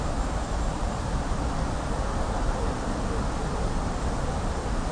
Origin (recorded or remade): recorded